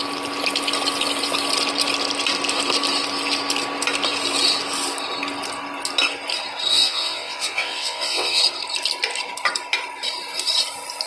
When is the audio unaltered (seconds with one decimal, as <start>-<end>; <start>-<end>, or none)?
0.0-6.7; 8.4-11.1